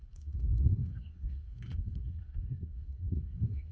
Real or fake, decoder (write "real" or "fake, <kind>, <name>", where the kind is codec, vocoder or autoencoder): fake, codec, SNAC